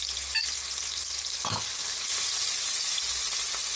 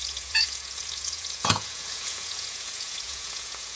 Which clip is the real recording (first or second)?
first